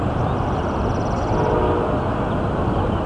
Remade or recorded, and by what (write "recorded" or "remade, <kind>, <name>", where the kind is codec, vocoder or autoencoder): recorded